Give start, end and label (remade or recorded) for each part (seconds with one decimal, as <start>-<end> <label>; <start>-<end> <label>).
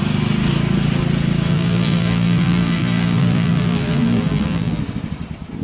0.0-1.5 recorded; 1.5-4.8 remade; 4.8-5.6 recorded